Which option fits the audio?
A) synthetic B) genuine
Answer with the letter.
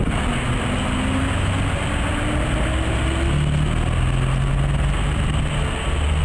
B